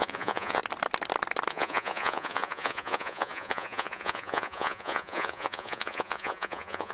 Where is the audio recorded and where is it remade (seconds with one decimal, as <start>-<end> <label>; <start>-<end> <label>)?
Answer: 0.0-0.6 remade; 0.6-1.5 recorded; 1.5-6.9 remade